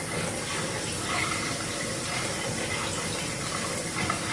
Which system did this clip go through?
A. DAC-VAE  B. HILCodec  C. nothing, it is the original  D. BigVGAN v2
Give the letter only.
C